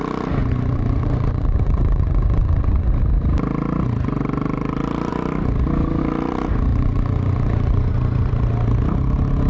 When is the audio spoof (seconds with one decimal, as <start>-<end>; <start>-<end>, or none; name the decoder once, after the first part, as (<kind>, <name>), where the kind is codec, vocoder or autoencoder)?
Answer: 0.4-2.9 (vocoder, Vocos); 6.7-8.3